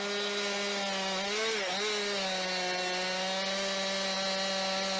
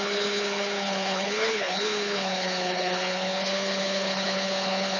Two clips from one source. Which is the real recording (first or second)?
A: first